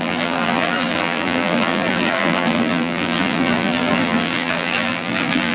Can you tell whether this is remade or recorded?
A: remade